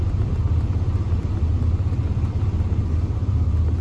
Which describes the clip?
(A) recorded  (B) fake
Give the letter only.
B